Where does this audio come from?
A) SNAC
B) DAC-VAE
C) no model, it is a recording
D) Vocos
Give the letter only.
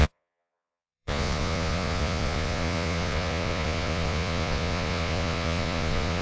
D